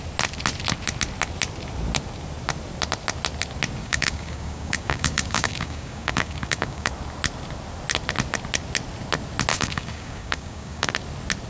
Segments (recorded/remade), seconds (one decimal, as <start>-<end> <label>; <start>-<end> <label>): 0.0-3.8 recorded; 3.8-6.9 remade; 6.9-9.5 recorded; 9.5-10.9 remade; 10.9-11.5 recorded